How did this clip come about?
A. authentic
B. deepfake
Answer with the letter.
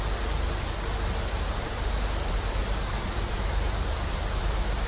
A